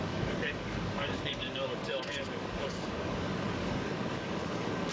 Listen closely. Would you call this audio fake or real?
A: fake